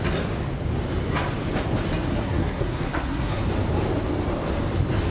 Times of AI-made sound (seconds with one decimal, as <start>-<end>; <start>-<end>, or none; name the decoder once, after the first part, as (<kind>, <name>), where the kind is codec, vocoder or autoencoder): 2.1-3.4 (codec, SNAC)